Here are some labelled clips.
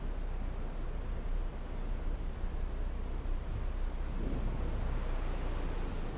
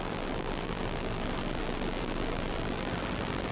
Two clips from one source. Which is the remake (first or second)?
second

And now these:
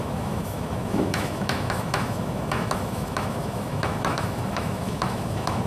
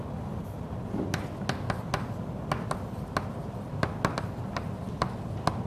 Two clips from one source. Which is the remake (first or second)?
first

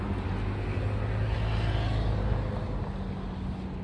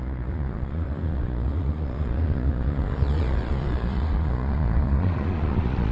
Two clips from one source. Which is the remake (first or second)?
second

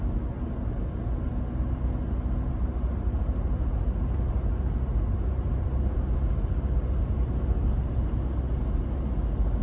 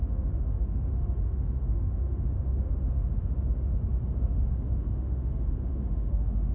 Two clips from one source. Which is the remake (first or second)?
second